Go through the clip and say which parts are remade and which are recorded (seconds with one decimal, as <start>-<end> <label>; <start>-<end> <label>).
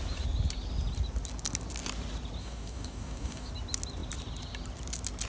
0.0-2.4 recorded; 2.4-3.5 remade; 3.5-5.3 recorded